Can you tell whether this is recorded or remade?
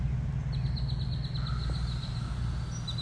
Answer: recorded